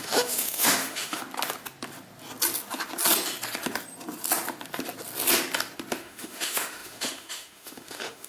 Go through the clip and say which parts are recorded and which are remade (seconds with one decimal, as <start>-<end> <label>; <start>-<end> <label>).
0.0-1.2 remade; 1.2-6.0 recorded; 6.0-8.3 remade